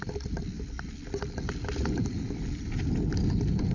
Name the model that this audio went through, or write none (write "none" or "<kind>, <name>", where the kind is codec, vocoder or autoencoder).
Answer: none